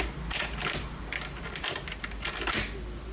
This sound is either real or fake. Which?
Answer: real